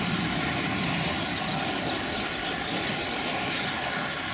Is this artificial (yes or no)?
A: no